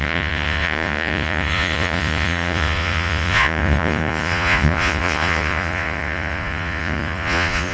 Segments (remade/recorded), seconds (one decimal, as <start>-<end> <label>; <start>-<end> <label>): 0.0-7.7 remade